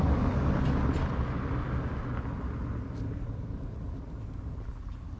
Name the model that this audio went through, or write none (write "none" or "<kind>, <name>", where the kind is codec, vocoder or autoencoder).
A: none